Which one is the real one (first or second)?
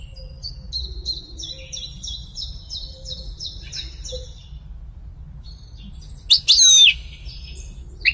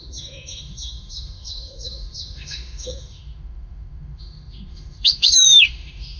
first